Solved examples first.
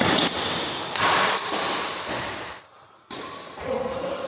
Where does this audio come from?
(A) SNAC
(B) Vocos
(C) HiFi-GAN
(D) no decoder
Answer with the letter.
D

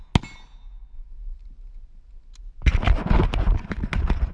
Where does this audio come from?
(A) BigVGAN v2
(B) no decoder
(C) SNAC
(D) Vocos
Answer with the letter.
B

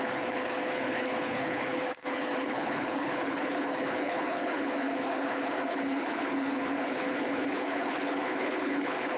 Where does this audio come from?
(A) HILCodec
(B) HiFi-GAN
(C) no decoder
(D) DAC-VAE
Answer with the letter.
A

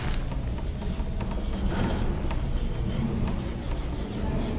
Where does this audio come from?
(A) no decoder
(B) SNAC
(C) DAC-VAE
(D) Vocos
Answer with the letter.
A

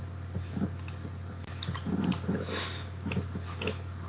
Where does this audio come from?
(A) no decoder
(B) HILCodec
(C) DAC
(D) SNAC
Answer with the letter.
A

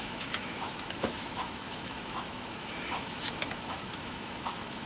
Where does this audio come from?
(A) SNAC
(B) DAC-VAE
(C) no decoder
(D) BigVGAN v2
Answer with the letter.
B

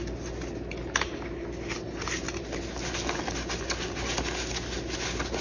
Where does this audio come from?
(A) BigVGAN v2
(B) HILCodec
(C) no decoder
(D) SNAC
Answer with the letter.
C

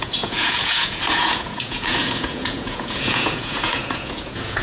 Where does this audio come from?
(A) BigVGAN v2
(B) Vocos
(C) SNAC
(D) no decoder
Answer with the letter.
B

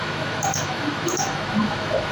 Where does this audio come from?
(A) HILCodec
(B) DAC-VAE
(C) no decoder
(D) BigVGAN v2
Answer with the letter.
B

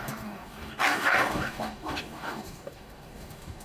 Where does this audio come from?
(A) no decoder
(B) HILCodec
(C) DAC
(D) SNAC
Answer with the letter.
C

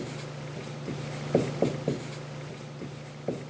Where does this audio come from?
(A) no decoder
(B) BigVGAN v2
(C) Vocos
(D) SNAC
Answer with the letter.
A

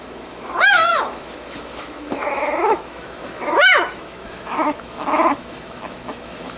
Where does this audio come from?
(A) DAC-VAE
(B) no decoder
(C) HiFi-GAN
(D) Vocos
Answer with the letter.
A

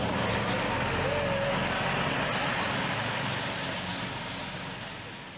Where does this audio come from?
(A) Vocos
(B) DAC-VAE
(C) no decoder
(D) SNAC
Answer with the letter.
C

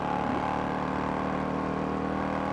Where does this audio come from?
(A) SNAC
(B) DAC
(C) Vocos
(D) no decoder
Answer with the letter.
D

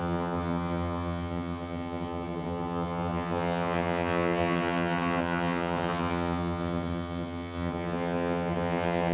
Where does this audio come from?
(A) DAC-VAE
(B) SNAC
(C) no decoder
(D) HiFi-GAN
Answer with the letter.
D